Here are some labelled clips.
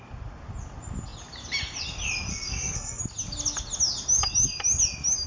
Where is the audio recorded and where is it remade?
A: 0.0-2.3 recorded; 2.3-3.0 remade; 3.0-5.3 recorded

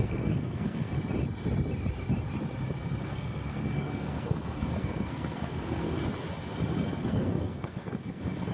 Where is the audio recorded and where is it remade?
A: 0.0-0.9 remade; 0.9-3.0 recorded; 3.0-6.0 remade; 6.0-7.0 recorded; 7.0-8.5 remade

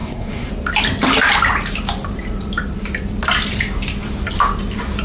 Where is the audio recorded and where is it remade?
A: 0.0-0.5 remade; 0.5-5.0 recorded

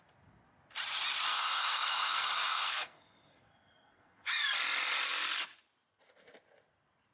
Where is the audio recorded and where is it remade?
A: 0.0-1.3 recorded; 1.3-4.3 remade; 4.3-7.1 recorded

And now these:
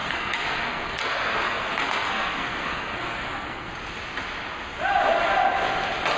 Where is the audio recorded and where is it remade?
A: 0.0-3.7 remade; 3.7-6.2 recorded

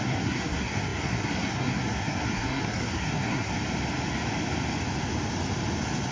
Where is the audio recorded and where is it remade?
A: 0.0-3.5 remade; 3.5-6.1 recorded